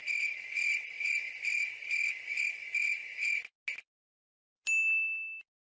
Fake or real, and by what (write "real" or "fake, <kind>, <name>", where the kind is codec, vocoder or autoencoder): real